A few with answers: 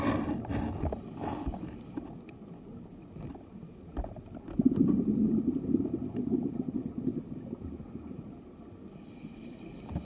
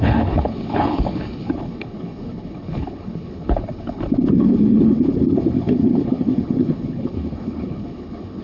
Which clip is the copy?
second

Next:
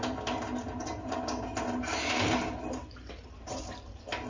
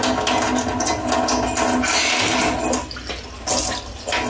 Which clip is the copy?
first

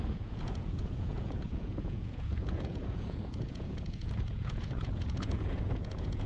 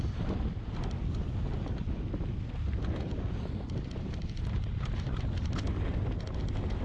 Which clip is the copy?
first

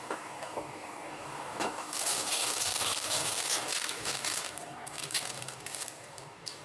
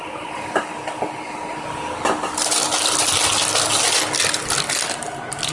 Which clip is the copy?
first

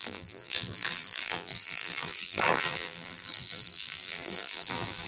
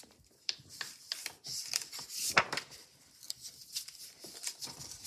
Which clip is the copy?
first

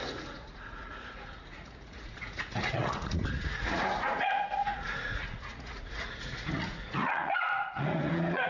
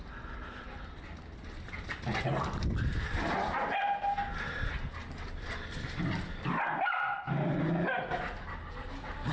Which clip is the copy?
first